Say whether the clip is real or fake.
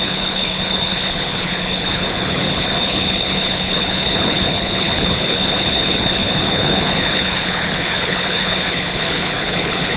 fake